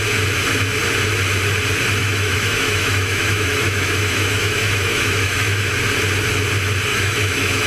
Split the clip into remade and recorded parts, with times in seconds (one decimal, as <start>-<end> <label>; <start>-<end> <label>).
0.0-2.0 recorded; 2.0-5.7 remade; 5.7-6.9 recorded; 6.9-7.7 remade